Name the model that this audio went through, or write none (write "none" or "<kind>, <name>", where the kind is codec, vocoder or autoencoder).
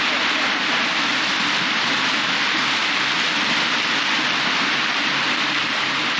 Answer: vocoder, BigVGAN v2